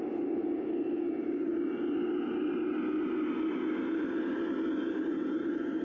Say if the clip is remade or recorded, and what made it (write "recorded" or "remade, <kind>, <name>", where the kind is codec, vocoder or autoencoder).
recorded